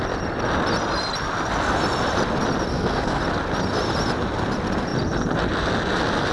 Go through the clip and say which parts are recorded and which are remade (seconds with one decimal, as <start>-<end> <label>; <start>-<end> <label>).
0.0-2.7 recorded; 2.7-3.2 remade; 3.2-6.3 recorded